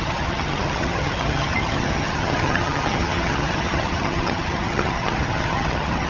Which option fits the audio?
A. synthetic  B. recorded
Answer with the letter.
A